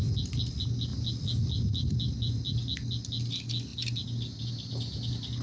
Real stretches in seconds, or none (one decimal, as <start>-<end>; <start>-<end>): 0.0-5.4